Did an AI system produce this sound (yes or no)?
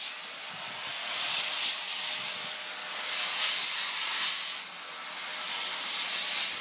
no